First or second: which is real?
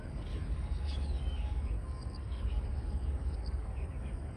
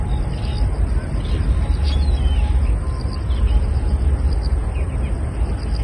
second